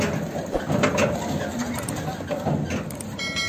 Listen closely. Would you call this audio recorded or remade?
recorded